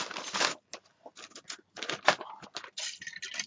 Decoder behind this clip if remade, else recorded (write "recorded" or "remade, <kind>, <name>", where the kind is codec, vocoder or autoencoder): recorded